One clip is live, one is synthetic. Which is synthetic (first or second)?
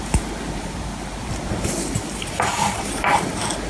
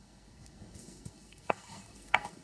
second